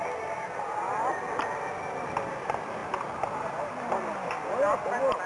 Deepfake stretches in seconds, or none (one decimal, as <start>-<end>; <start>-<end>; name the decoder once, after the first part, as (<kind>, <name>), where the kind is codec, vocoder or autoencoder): none

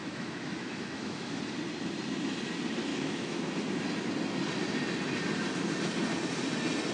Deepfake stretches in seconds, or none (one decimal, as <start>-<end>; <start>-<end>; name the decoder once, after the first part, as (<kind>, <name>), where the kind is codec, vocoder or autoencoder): 0.0-1.4 (autoencoder, DAC-VAE); 2.9-3.5

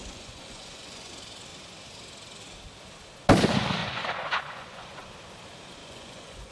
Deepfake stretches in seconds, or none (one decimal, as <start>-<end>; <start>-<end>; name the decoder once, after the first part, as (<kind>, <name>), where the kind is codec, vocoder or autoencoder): 0.0-1.1 (vocoder, Vocos); 3.8-5.1; 5.8-6.5

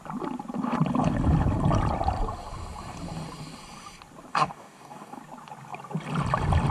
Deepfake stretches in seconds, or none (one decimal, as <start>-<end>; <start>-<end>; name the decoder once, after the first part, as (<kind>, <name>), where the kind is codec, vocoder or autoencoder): 4.3-5.2 (codec, DAC)

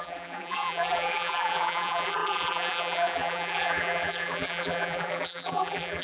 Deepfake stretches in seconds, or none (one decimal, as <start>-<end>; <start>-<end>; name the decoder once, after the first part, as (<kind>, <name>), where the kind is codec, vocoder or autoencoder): 0.0-6.0 (vocoder, BigVGAN v2)

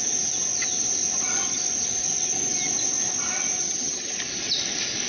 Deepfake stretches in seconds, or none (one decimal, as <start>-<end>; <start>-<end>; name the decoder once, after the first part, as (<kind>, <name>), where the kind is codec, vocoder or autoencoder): 3.6-4.2 (vocoder, HiFi-GAN)

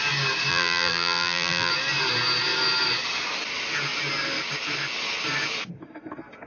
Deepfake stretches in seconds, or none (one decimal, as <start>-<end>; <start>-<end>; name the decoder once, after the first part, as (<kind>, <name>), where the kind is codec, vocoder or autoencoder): 0.5-1.7 (vocoder, BigVGAN v2)